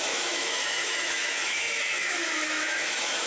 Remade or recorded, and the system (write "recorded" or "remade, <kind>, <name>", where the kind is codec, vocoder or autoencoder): remade, autoencoder, DAC-VAE